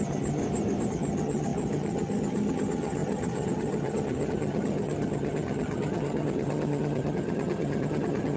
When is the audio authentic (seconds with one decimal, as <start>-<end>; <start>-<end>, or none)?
0.4-0.9